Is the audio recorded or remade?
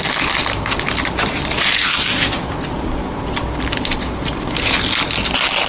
recorded